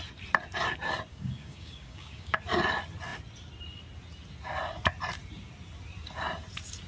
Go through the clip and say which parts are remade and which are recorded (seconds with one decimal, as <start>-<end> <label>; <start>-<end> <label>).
0.0-1.1 recorded; 1.1-2.4 remade; 2.4-6.9 recorded